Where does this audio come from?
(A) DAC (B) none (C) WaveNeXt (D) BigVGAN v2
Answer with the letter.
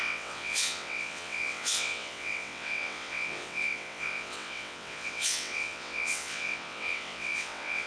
C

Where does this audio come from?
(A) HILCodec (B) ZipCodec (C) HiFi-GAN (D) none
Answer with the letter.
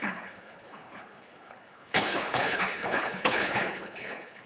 A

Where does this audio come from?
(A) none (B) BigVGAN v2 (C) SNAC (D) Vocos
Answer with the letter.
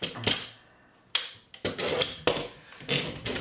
A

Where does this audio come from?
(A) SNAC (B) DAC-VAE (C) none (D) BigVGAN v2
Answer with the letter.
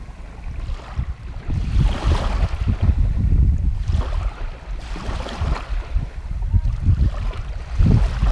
D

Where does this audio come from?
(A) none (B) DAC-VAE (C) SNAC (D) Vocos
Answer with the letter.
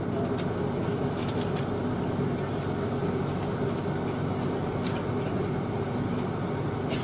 A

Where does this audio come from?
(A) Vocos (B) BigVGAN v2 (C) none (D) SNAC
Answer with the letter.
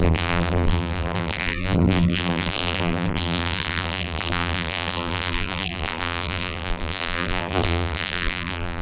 B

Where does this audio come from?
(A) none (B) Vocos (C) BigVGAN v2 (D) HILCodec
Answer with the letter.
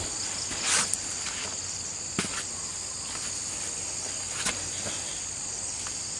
A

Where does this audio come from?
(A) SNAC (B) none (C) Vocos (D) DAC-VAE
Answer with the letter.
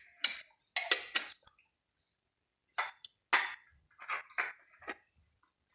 B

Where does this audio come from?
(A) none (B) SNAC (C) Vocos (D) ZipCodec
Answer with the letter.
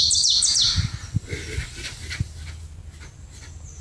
A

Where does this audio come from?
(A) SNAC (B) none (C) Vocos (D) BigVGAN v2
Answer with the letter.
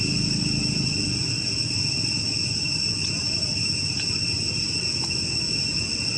B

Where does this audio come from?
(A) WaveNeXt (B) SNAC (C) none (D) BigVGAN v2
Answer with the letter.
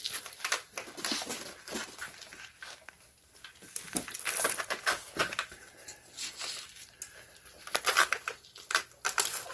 C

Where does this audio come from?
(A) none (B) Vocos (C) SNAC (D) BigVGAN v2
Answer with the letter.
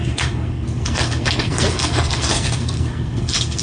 C